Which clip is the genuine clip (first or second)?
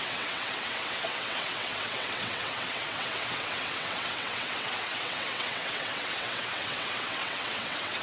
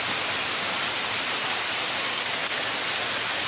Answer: second